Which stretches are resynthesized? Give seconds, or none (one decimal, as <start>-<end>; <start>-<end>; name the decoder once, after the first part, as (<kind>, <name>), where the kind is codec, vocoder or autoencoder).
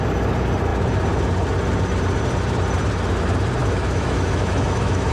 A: 3.6-5.1 (autoencoder, DAC-VAE)